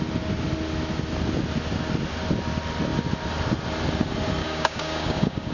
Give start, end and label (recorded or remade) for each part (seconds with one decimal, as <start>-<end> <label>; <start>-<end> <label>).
0.0-4.4 recorded; 4.4-5.5 remade